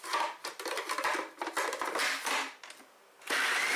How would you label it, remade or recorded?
recorded